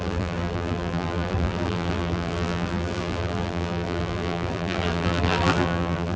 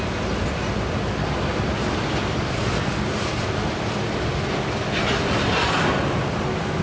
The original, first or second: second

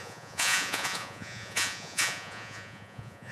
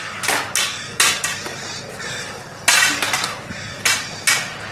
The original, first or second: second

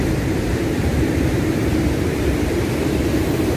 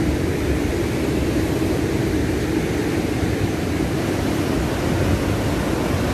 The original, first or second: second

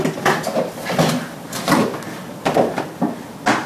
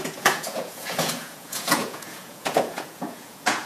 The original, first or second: first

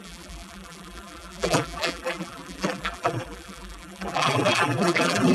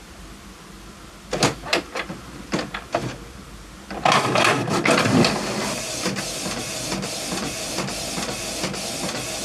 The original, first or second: second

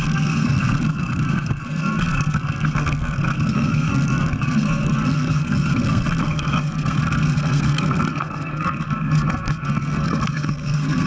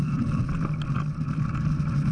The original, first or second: second